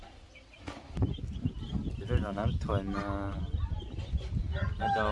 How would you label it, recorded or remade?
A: recorded